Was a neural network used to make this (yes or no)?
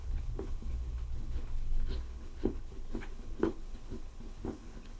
yes